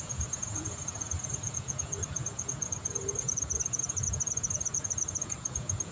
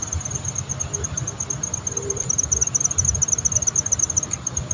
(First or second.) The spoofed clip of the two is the first